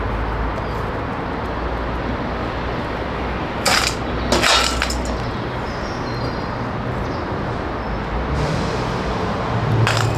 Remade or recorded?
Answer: recorded